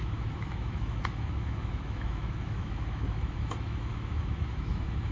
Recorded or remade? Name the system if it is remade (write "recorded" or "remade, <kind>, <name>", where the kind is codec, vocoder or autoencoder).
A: remade, autoencoder, DAC-VAE